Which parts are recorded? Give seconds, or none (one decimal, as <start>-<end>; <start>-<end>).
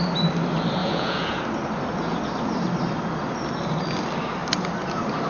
0.0-0.8; 1.4-5.3